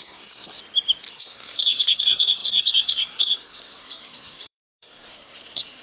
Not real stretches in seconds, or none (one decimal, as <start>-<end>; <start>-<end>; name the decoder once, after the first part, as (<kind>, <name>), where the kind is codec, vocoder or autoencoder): 0.0-0.6 (codec, SNAC); 1.1-5.8